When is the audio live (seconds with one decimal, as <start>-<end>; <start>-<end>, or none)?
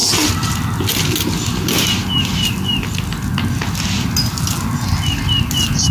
0.0-5.9